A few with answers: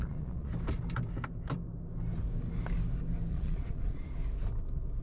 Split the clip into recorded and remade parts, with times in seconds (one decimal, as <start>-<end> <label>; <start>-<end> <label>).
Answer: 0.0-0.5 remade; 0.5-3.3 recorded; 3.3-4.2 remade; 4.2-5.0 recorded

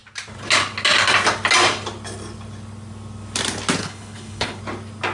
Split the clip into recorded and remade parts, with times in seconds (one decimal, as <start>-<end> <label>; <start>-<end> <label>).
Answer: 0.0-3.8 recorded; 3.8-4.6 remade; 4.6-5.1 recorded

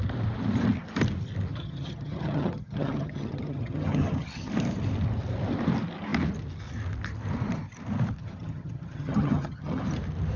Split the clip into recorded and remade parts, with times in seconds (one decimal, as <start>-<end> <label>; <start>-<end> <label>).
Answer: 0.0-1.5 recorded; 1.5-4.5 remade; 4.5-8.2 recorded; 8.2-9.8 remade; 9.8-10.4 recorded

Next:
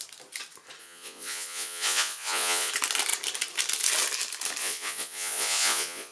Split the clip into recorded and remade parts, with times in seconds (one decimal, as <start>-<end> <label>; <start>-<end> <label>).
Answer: 0.0-0.8 recorded; 0.8-2.7 remade; 2.7-4.6 recorded; 4.6-6.1 remade

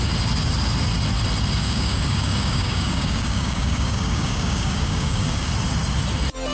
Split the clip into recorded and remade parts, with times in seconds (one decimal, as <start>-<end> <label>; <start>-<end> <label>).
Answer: 0.0-1.6 recorded; 1.6-5.5 remade; 5.5-6.5 recorded

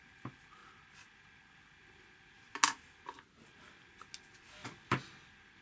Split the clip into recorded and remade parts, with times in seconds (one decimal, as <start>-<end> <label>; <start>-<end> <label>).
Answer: 0.0-5.6 recorded

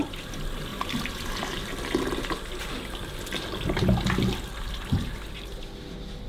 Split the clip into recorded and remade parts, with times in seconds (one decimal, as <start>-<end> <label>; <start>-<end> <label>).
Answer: 0.0-0.7 recorded; 0.7-1.8 remade; 1.8-6.3 recorded